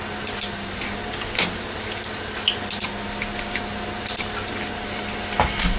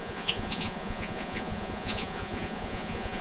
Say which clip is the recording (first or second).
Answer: first